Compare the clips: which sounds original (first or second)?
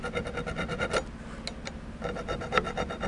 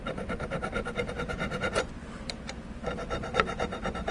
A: first